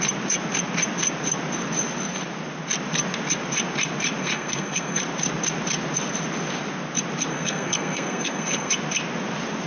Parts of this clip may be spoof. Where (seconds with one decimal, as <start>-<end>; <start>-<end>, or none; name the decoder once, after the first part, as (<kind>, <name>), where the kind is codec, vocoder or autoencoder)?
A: 4.2-5.0 (codec, SNAC); 7.3-8.7